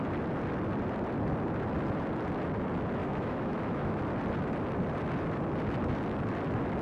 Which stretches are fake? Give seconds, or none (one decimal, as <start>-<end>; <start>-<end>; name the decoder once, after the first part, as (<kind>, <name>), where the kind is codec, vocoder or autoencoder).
3.0-4.0 (autoencoder, DAC-VAE)